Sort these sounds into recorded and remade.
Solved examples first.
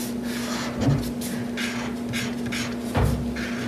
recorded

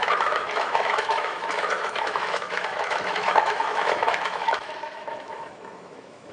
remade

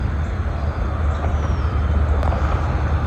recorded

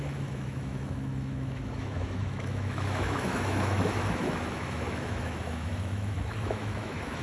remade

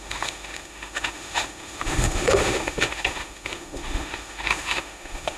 remade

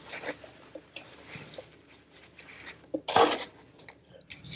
recorded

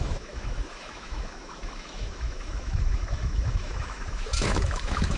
remade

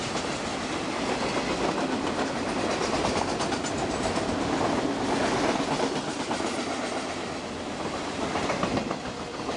recorded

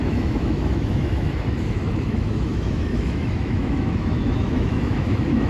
remade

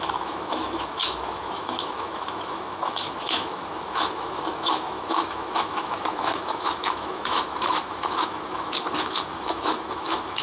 remade